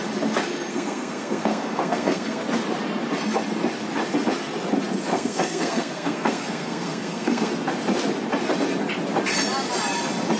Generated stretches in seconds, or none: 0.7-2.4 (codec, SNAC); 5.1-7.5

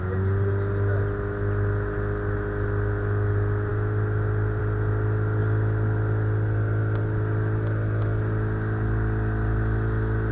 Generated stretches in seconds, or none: none

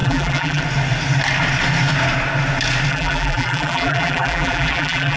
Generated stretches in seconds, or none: 0.0-0.6 (vocoder, BigVGAN v2); 2.9-5.2

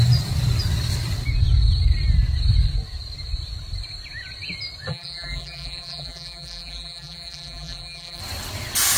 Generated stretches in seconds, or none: 4.9-8.2 (vocoder, BigVGAN v2)

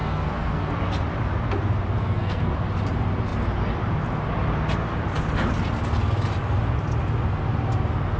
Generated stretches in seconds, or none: 0.0-0.7 (codec, SNAC); 2.0-2.5

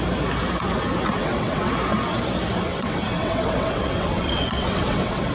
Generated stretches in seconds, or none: 1.2-1.7 (vocoder, WaveNeXt); 2.7-5.3

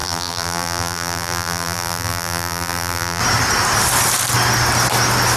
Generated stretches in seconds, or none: 0.0-3.2 (vocoder, BigVGAN v2)

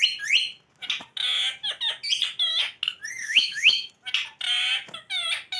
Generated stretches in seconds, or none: 3.2-3.9 (autoencoder, DAC-VAE)